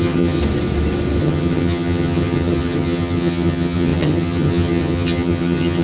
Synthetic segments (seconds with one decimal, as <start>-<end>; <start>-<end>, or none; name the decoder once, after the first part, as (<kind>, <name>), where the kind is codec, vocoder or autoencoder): 0.0-0.4 (vocoder, HiFi-GAN); 1.2-5.8